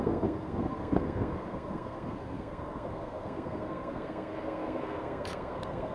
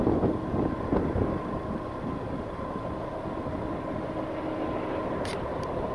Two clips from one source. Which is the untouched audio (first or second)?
second